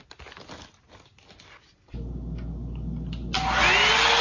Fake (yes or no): no